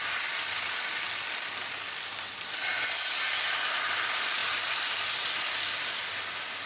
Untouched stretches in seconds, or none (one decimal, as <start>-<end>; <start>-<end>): 0.0-6.7